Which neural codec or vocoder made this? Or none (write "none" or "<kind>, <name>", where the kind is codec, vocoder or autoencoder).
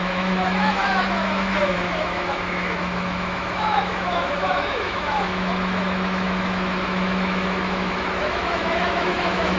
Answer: autoencoder, DAC-VAE